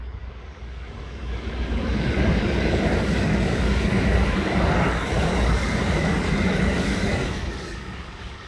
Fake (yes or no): yes